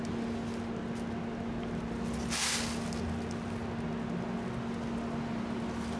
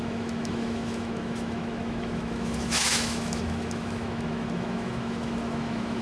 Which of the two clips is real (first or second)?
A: first